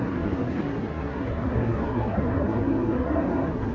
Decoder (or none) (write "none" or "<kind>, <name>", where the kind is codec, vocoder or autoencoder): codec, SNAC